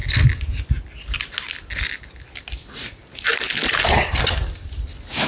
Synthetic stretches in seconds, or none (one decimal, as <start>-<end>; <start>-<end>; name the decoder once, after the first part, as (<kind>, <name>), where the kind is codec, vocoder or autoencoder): 3.0-4.2 (vocoder, BigVGAN v2)